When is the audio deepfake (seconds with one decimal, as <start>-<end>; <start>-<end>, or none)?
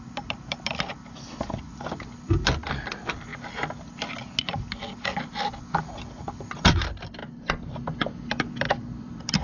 0.0-3.3; 6.2-7.2; 8.7-9.4